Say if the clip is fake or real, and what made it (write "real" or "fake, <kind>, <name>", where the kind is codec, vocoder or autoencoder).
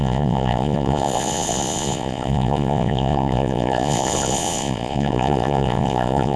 fake, vocoder, Vocos